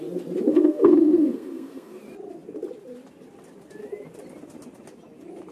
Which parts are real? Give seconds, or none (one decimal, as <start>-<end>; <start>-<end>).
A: 0.0-0.5; 2.0-5.5